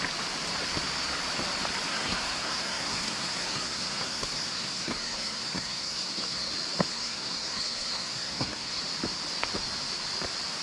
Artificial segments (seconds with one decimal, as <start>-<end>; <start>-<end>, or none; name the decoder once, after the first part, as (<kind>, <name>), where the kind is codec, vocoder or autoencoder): 1.9-6.5 (codec, SNAC); 6.9-8.8